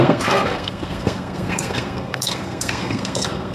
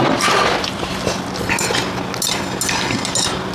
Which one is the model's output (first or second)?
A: first